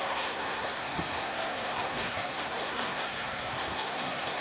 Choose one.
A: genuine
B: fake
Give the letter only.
B